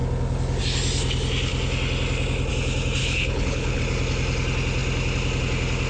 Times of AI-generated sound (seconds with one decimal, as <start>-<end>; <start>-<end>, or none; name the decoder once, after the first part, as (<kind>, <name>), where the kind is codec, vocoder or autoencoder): 3.0-3.8 (codec, HILCodec)